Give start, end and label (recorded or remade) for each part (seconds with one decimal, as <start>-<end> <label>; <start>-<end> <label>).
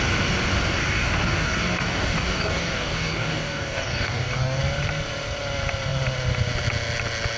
0.0-0.8 recorded; 0.8-4.6 remade; 4.6-7.4 recorded